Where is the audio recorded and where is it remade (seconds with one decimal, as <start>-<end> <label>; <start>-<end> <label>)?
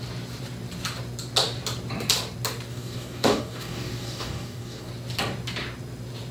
0.0-2.7 recorded; 2.7-4.9 remade; 4.9-6.3 recorded